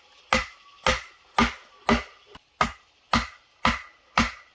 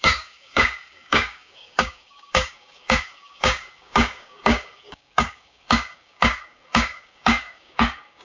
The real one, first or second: first